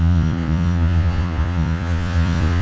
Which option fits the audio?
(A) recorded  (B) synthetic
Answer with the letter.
B